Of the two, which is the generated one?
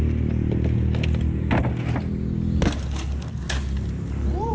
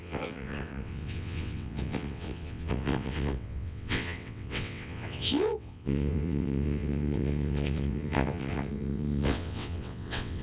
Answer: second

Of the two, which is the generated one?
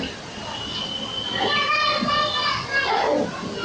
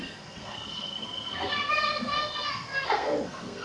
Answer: second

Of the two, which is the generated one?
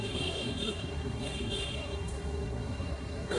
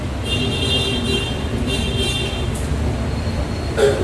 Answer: first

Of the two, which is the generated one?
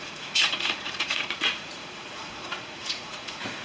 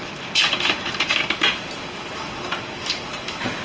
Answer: first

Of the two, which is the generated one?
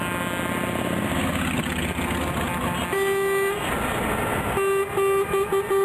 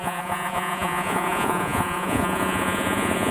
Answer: second